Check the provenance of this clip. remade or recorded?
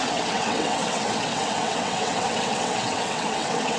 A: remade